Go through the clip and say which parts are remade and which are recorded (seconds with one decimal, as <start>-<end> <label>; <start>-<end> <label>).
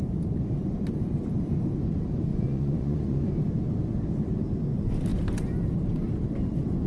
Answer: 0.0-2.3 recorded; 2.3-3.3 remade; 3.3-6.9 recorded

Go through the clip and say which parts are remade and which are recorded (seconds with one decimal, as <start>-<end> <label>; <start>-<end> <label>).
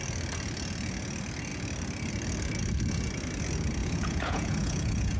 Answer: 0.0-3.8 recorded; 3.8-5.2 remade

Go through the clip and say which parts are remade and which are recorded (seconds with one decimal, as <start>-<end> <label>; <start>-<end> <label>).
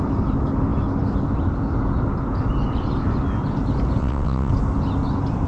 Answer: 0.0-4.0 recorded; 4.0-4.5 remade; 4.5-5.5 recorded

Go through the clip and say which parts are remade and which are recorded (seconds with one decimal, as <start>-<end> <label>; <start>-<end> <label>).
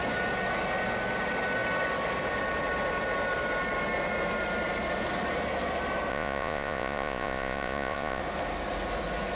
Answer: 0.0-6.1 recorded; 6.1-8.2 remade; 8.2-9.4 recorded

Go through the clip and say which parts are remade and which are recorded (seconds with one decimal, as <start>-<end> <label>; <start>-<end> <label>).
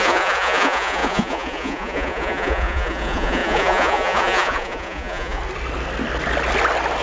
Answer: 0.0-5.4 remade; 5.4-7.0 recorded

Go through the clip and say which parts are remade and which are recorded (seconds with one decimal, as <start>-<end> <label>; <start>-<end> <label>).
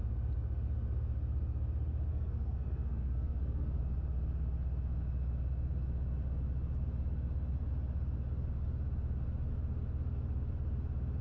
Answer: 0.0-2.1 recorded; 2.1-3.8 remade; 3.8-11.2 recorded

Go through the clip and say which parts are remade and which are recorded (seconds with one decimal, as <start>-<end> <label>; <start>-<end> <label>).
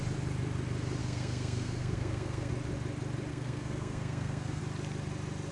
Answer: 0.0-1.0 recorded; 1.0-2.5 remade; 2.5-3.3 recorded; 3.3-4.6 remade; 4.6-5.5 recorded